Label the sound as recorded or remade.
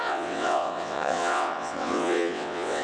remade